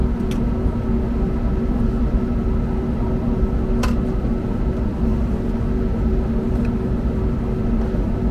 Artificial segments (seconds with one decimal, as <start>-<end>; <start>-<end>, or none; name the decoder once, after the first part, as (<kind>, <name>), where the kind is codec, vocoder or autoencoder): none